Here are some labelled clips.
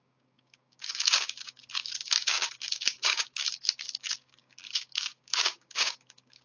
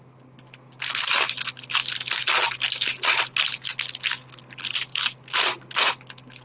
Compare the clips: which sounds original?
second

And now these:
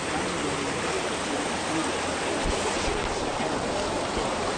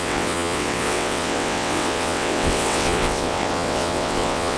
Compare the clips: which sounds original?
first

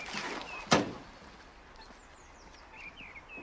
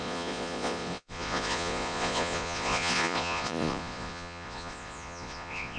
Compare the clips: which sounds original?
first